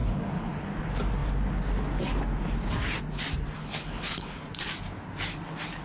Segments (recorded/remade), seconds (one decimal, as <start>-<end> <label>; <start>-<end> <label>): 0.0-0.7 remade; 0.7-3.6 recorded; 3.6-4.4 remade; 4.4-5.8 recorded